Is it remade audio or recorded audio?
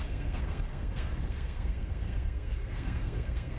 remade